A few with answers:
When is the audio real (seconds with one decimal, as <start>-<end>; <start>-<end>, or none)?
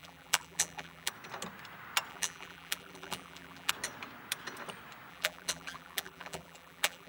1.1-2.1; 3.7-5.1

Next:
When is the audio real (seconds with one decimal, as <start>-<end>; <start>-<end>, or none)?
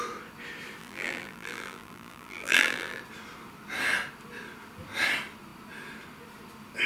0.0-0.8; 3.0-6.9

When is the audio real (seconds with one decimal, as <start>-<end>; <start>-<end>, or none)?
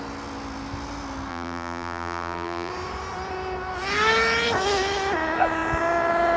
0.0-1.3; 2.7-6.4